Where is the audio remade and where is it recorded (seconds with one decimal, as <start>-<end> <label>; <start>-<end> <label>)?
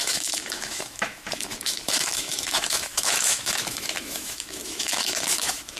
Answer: 0.0-5.8 remade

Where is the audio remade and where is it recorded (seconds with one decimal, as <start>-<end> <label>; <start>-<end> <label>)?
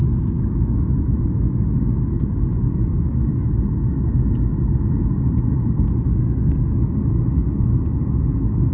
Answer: 0.0-3.3 remade; 3.3-7.1 recorded; 7.1-8.7 remade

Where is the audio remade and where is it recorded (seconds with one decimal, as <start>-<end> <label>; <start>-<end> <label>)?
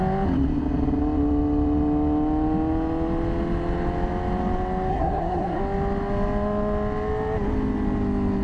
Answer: 0.0-4.9 recorded; 4.9-5.6 remade; 5.6-8.4 recorded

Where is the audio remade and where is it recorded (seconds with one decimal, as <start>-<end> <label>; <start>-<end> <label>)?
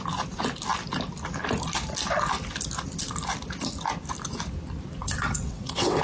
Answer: 0.0-5.0 recorded; 5.0-6.0 remade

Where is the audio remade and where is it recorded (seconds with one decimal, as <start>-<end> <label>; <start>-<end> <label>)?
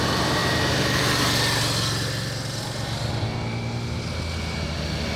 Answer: 0.0-5.2 recorded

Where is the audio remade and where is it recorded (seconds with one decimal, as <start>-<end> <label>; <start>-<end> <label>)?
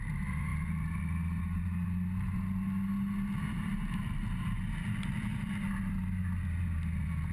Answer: 0.0-3.7 recorded; 3.7-4.2 remade; 4.2-7.3 recorded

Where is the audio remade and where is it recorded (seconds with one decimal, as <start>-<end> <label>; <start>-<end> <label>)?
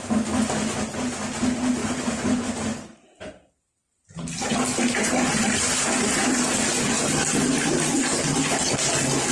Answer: 0.0-9.3 recorded